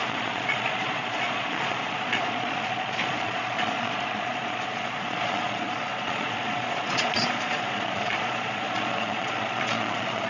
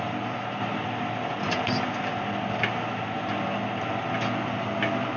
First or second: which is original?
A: second